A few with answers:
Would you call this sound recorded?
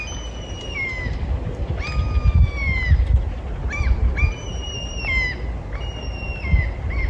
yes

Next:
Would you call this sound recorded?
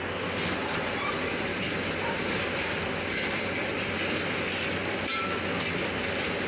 yes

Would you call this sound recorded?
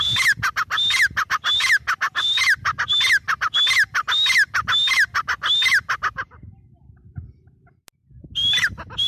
yes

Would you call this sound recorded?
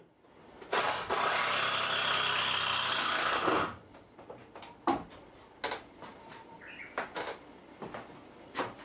yes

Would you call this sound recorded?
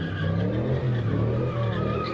yes